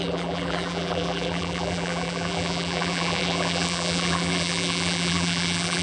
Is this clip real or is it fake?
fake